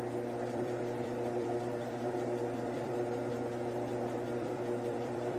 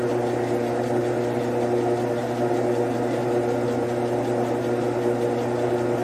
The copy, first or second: first